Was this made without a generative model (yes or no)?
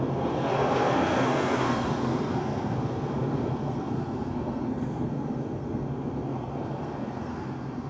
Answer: no